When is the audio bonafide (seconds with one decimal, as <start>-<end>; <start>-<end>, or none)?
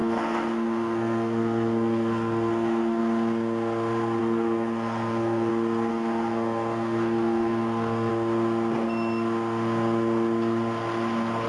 3.0-4.2; 5.5-5.9; 8.1-11.5